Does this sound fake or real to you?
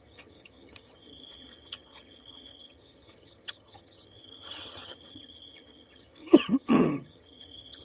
fake